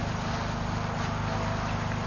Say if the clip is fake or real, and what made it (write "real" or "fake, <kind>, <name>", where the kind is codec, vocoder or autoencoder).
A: real